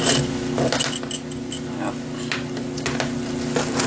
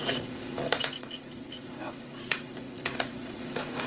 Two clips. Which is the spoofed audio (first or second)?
second